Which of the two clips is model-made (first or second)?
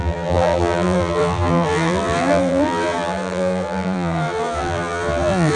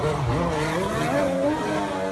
first